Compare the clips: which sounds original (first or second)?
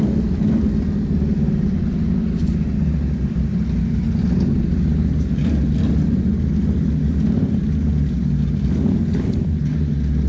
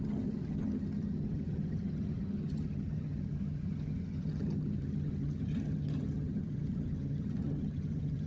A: first